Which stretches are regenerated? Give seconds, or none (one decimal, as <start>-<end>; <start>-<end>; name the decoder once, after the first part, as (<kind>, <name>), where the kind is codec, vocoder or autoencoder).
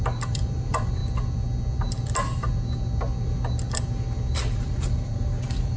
0.0-1.0 (vocoder, BigVGAN v2); 4.5-5.8